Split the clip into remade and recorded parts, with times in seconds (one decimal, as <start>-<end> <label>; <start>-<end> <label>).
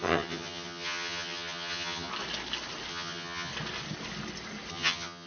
0.0-2.1 remade; 2.1-2.9 recorded; 2.9-3.5 remade; 3.5-4.7 recorded; 4.7-5.3 remade